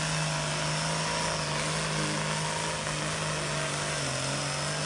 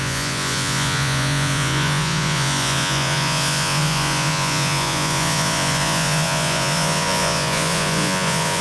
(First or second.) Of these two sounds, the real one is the first